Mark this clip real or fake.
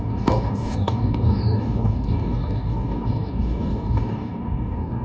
fake